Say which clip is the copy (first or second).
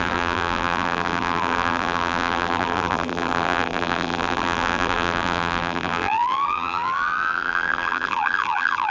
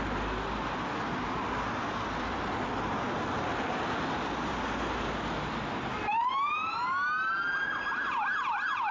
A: first